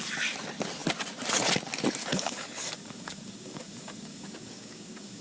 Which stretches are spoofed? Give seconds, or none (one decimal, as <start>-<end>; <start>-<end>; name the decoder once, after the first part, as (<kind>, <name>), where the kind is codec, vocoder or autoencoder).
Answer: 2.0-5.2 (codec, DAC)